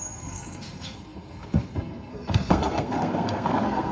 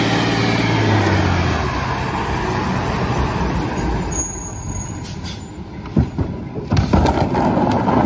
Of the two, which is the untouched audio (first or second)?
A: second